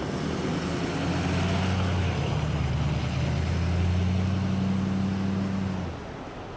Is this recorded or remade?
recorded